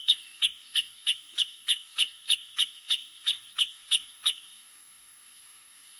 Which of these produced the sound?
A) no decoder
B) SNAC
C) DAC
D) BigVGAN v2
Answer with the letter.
C